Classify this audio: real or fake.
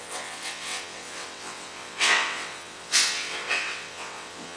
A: fake